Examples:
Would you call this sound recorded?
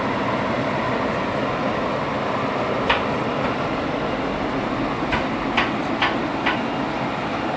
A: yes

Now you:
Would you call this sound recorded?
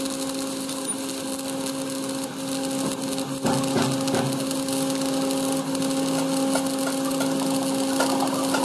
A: yes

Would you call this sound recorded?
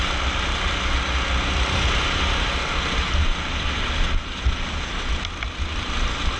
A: yes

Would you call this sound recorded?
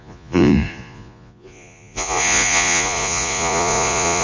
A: no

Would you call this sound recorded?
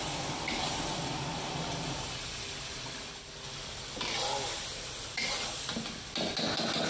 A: yes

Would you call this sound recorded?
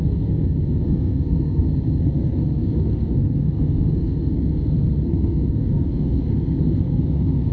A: no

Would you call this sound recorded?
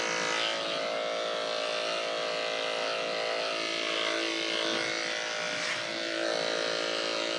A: yes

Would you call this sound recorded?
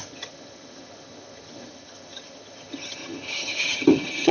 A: no